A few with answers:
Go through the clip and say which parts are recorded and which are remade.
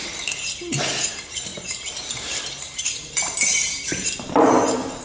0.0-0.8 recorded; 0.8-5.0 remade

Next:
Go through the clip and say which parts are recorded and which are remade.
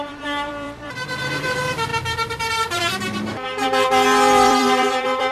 0.0-1.9 remade; 1.9-2.5 recorded; 2.5-5.3 remade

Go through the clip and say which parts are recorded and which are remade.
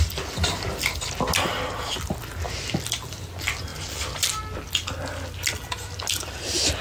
0.0-6.8 recorded